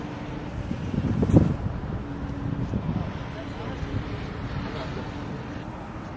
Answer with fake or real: real